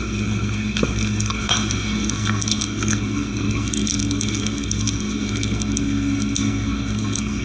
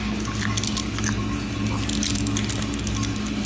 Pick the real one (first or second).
second